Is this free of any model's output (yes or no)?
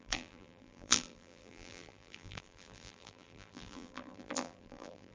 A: no